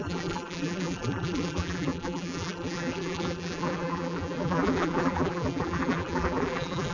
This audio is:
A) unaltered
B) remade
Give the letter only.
B